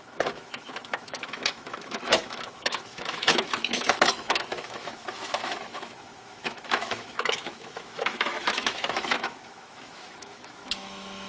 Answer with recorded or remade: remade